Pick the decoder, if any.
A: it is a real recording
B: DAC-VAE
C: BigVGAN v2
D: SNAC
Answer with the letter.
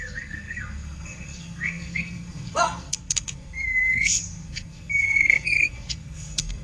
D